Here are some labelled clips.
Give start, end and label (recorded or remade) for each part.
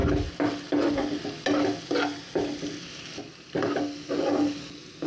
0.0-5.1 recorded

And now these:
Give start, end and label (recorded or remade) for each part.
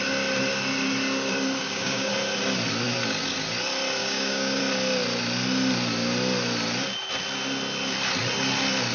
0.0-1.6 recorded; 1.6-2.1 remade; 2.1-4.0 recorded; 4.0-4.6 remade; 4.6-8.9 recorded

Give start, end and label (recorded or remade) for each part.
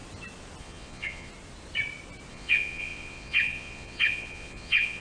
0.0-0.6 recorded; 0.6-1.3 remade; 1.3-2.3 recorded; 2.3-5.0 remade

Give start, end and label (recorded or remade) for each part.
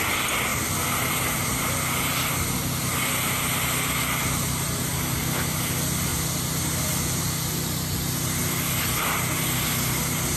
0.0-4.2 recorded; 4.2-4.8 remade; 4.8-10.4 recorded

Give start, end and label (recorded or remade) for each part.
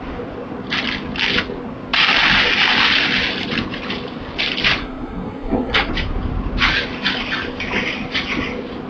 0.0-4.8 recorded; 4.8-5.9 remade; 5.9-8.9 recorded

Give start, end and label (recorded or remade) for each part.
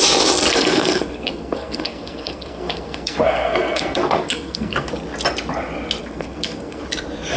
0.0-0.5 recorded; 0.5-4.9 remade; 4.9-6.0 recorded; 6.0-6.8 remade; 6.8-7.4 recorded